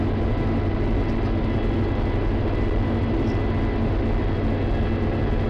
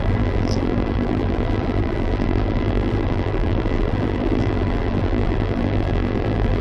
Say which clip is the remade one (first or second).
second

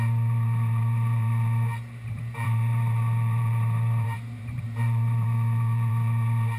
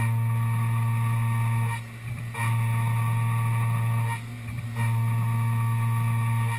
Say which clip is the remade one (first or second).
first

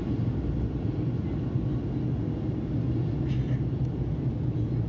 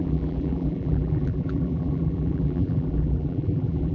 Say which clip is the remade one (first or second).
second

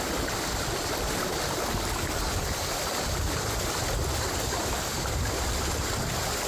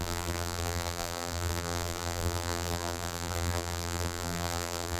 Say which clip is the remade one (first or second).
second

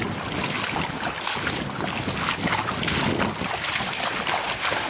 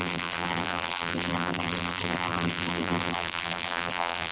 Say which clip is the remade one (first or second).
second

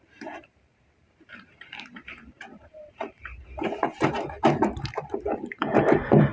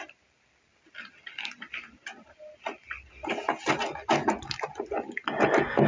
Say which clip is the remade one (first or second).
first